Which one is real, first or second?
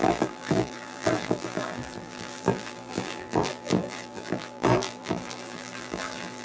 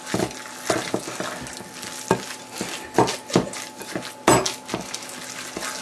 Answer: second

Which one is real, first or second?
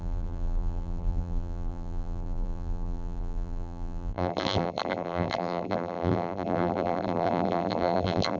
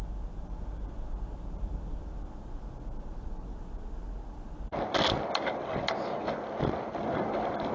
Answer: second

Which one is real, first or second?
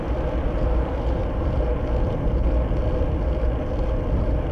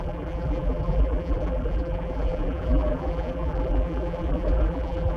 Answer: first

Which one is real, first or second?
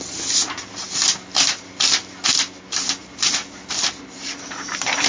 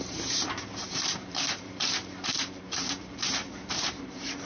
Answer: first